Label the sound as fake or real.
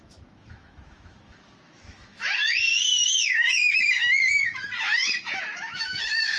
fake